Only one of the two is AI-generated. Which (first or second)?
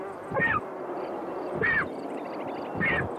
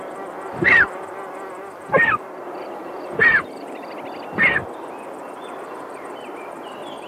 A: second